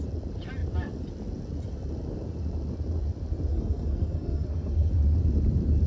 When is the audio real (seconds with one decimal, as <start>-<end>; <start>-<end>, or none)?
0.0-3.5; 4.9-5.9